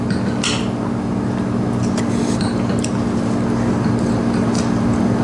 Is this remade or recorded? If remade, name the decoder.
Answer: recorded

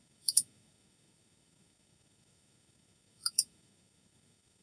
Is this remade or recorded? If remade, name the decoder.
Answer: remade, autoencoder, DAC-VAE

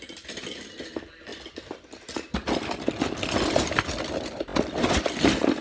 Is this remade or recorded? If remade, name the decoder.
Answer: recorded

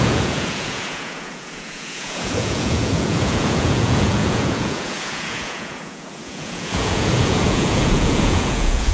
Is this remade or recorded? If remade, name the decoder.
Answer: remade, vocoder, Vocos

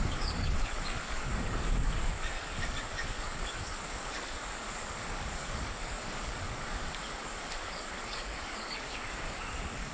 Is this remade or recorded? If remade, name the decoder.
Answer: remade, codec, DAC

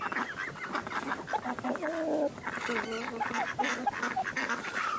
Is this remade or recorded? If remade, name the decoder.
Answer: recorded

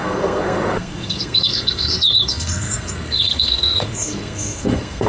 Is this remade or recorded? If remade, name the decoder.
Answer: remade, codec, SNAC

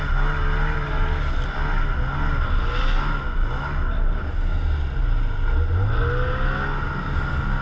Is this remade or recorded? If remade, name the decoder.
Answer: recorded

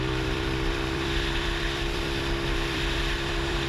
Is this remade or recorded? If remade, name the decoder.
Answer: remade, vocoder, BigVGAN v2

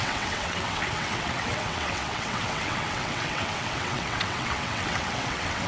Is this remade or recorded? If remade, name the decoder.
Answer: remade, vocoder, WaveNeXt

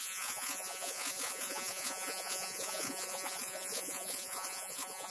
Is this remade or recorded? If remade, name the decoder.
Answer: remade, vocoder, Vocos